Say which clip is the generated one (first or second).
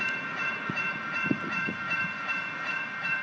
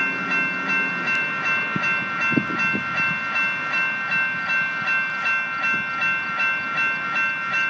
first